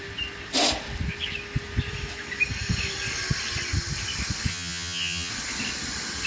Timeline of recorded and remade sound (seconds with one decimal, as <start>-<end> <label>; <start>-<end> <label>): 0.0-4.5 recorded; 4.5-5.3 remade; 5.3-6.3 recorded